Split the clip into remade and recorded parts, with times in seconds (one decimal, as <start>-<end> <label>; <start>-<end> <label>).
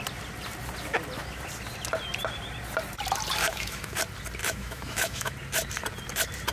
0.0-3.4 recorded; 3.4-4.0 remade; 4.0-4.4 recorded; 4.4-5.3 remade; 5.3-6.5 recorded